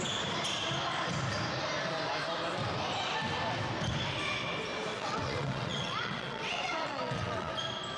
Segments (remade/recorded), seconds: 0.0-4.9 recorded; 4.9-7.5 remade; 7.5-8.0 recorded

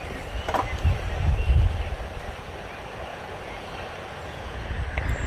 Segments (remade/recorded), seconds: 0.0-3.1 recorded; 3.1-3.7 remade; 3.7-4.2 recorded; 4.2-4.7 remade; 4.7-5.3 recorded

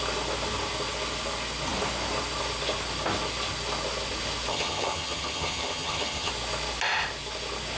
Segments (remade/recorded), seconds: 0.0-4.5 recorded; 4.5-6.3 remade; 6.3-7.8 recorded